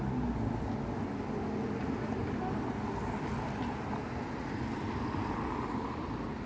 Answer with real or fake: real